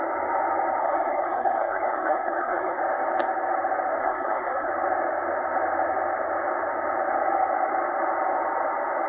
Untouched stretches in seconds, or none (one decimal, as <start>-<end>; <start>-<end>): 0.0-0.8; 2.8-4.0; 4.7-9.1